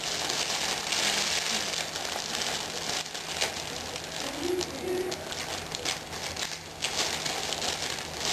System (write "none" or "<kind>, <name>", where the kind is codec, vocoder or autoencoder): none